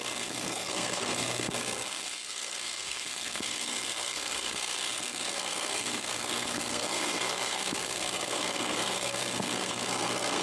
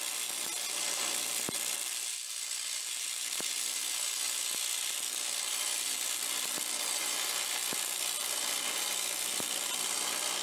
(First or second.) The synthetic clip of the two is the first